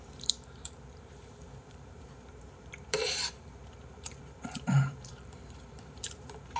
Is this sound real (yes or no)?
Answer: no